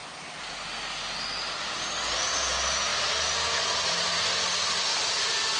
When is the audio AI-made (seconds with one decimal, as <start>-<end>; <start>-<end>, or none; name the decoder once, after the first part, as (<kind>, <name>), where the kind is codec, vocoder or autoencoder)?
none